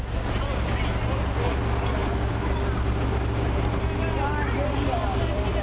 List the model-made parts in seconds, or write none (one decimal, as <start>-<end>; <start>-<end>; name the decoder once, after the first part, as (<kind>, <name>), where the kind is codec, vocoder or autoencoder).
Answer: none